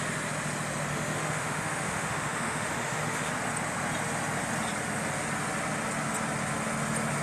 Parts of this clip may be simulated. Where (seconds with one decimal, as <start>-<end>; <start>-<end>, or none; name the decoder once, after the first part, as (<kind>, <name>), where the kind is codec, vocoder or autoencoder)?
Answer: 0.9-3.3 (autoencoder, DAC-VAE)